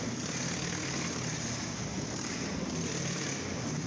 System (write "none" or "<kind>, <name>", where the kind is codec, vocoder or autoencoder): none